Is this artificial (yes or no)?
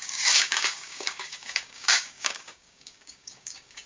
yes